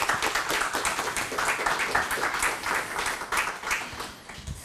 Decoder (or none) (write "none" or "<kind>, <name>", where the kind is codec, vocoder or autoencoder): none